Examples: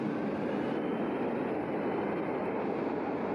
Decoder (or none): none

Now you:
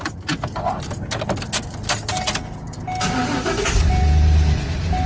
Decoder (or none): none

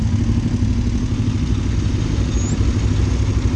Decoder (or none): none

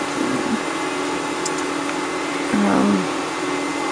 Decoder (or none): none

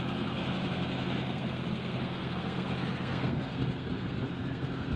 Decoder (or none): codec, SNAC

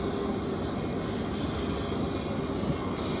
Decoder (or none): none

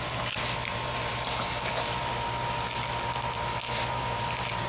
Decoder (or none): none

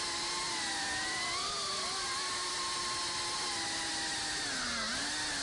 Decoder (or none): none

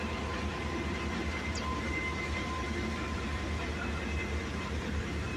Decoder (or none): none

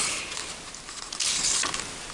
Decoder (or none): none